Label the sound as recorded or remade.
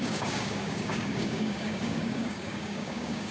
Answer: remade